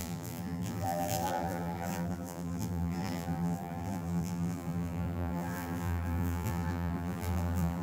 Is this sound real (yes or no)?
no